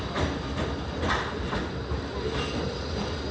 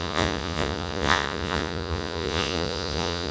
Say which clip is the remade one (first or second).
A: second